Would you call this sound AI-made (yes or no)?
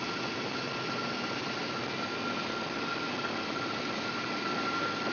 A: yes